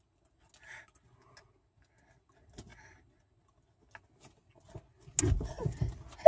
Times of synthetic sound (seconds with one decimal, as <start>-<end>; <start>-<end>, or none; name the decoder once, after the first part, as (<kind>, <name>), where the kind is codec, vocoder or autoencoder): none